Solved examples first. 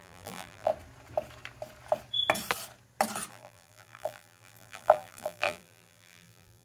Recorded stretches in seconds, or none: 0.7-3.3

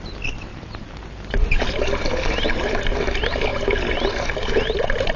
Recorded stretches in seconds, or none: 0.0-0.5; 1.5-5.2

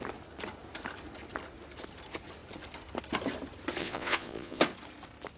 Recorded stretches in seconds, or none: 0.0-3.8; 4.6-5.4

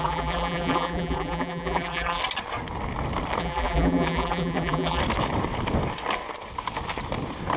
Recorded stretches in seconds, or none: 2.2-3.4; 5.0-7.6

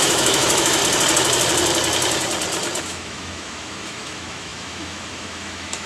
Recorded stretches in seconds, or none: 0.8-2.8